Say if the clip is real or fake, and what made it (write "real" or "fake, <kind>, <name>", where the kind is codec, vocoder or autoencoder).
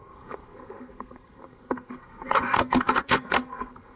fake, codec, SNAC